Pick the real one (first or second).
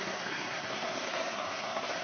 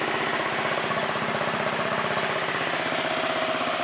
second